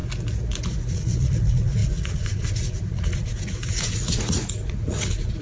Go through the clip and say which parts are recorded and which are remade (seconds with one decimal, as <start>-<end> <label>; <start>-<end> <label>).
0.0-0.9 recorded; 0.9-5.4 remade